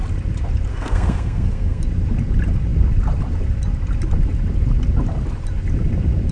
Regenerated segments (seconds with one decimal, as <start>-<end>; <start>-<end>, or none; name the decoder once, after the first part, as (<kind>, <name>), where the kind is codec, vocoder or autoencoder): 0.7-1.8 (codec, SNAC)